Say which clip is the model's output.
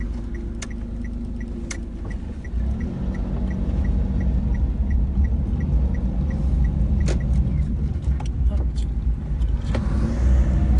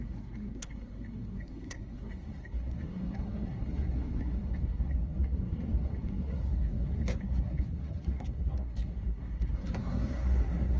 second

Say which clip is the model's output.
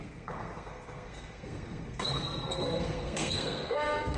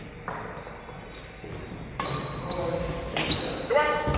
first